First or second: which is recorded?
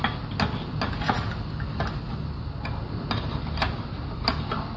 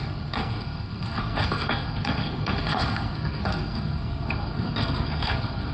first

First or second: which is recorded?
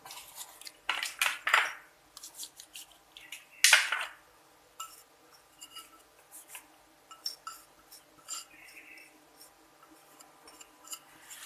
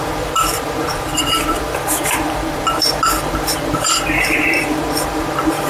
first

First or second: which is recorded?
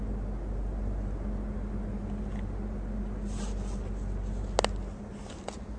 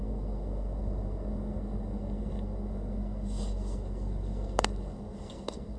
first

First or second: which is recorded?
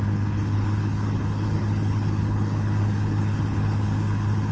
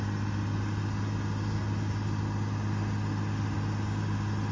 second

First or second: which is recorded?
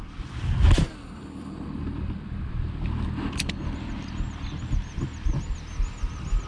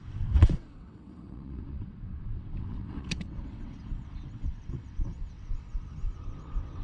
first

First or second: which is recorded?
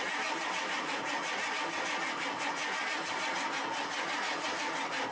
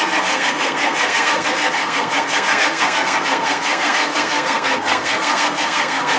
first